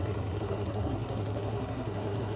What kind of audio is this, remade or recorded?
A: remade